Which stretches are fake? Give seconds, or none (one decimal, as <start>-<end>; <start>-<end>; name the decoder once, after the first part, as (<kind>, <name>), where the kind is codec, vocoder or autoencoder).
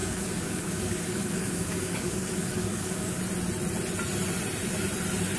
0.0-3.2 (codec, DAC)